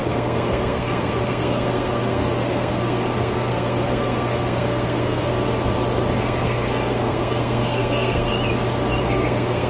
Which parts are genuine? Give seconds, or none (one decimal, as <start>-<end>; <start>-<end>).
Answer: 5.3-6.2; 8.3-9.0